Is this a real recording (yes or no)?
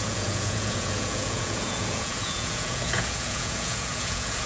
no